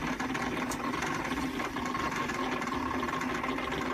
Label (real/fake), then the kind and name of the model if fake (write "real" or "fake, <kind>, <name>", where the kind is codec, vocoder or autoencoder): real